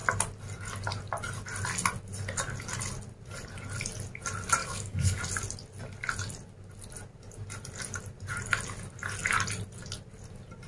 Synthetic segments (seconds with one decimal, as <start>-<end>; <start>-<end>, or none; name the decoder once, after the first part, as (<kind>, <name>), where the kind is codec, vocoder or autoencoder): 4.6-5.2 (codec, DAC)